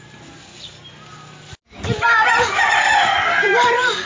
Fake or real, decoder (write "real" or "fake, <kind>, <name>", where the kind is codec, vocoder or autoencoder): real